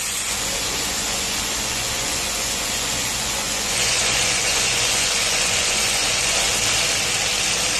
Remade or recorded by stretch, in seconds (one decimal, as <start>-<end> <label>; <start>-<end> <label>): 0.0-6.5 remade; 6.5-7.8 recorded